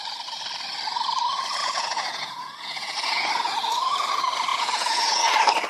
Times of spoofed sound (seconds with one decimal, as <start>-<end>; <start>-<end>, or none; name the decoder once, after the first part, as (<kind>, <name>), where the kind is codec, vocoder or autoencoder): 1.6-3.3 (vocoder, Vocos); 4.5-5.2

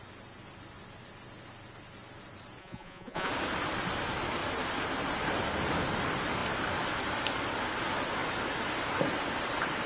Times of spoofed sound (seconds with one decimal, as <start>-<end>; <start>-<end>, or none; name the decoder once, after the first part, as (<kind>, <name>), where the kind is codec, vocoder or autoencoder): 2.6-3.3 (vocoder, Vocos)

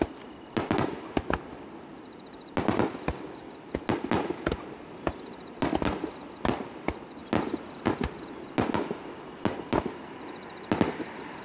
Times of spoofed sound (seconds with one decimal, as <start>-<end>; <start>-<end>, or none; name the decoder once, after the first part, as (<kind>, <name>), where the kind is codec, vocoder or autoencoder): none

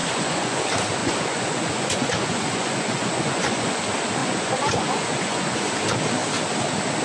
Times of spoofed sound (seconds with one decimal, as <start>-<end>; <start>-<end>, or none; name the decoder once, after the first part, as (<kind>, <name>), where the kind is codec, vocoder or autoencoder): 0.0-0.6 (vocoder, Vocos); 1.0-3.8; 4.2-5.7

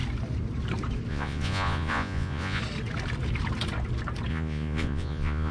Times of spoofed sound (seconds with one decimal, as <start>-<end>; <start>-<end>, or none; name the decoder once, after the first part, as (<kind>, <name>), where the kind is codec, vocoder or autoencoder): 1.1-2.6 (vocoder, Vocos); 4.3-5.5